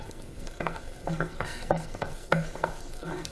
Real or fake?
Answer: fake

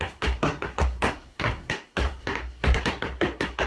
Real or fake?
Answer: fake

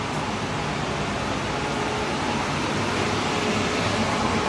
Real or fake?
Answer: real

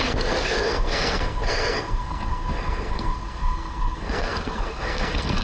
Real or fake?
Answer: fake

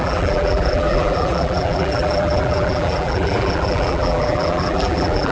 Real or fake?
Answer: fake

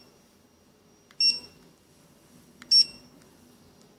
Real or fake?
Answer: real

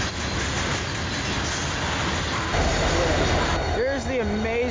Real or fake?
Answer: real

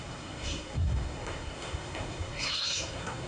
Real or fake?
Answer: fake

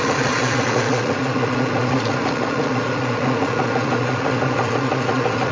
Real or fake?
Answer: fake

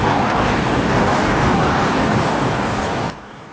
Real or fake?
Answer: fake